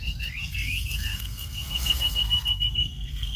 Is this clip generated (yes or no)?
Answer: yes